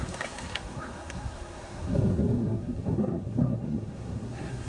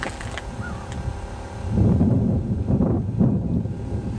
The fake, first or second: first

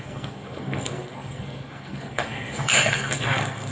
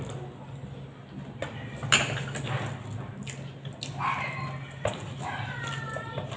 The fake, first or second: first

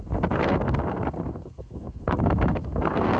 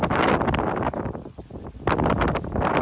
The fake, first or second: first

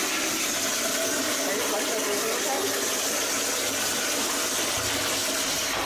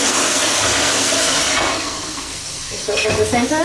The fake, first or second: second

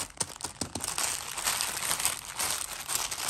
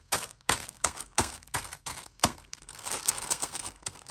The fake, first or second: second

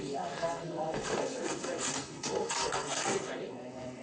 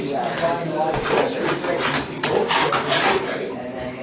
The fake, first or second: first